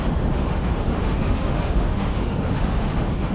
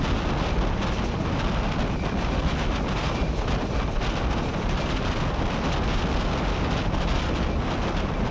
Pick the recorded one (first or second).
second